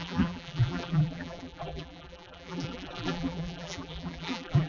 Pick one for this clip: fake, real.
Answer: fake